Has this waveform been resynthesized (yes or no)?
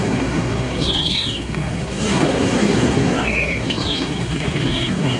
yes